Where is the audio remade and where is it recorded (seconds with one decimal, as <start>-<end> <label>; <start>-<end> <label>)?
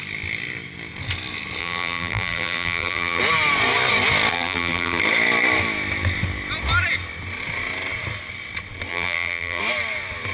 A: 0.0-1.6 recorded; 1.6-3.2 remade; 3.2-4.3 recorded; 4.3-5.0 remade; 5.0-8.9 recorded; 8.9-9.6 remade; 9.6-10.3 recorded